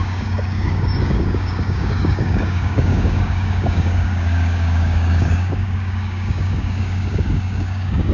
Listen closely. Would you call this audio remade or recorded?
remade